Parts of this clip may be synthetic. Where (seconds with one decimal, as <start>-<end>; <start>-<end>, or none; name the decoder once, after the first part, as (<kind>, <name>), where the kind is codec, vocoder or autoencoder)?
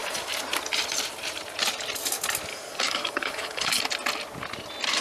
2.5-3.8 (codec, DAC)